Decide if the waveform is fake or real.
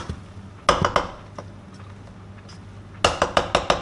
real